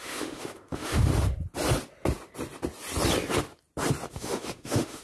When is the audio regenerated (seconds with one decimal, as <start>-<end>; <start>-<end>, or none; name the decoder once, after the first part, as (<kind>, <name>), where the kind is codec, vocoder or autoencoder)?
0.0-1.1 (autoencoder, DAC-VAE); 4.1-5.0